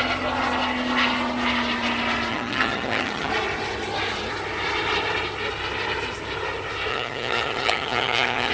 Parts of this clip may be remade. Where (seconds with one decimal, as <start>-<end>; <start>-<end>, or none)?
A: 2.3-3.3; 6.9-8.5